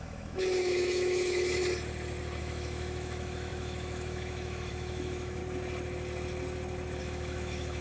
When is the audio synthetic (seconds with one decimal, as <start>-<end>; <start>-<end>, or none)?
0.0-1.6; 2.4-5.4; 7.0-7.8